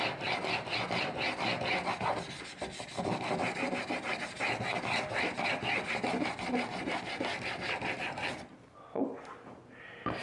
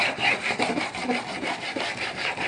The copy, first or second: second